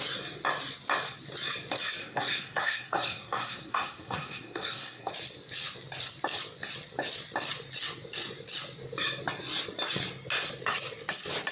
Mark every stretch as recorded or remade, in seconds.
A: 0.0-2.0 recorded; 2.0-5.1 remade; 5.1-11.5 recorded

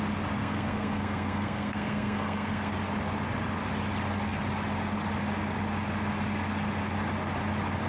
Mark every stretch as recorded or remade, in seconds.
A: 0.0-0.4 recorded; 0.4-2.7 remade; 2.7-7.9 recorded